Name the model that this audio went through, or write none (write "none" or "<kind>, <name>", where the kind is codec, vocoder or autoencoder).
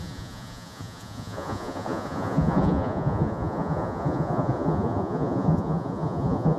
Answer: vocoder, Vocos